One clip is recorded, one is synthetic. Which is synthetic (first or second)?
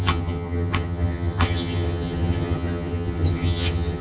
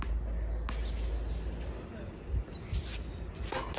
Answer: first